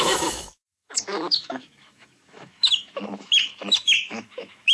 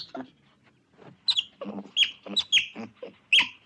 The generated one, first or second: first